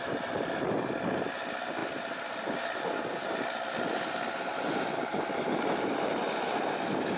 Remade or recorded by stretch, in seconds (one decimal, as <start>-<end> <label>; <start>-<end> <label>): 0.0-7.2 recorded